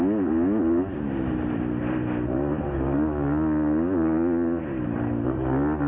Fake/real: real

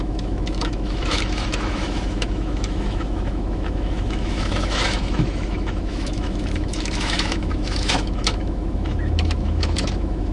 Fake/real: fake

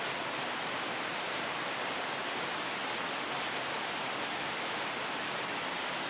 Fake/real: real